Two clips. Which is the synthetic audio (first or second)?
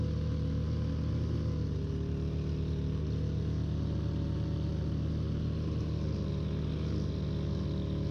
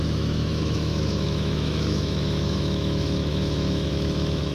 second